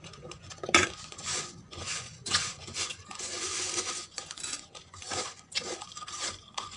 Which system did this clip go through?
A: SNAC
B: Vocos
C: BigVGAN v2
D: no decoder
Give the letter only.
B